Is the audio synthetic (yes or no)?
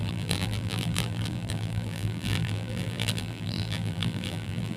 yes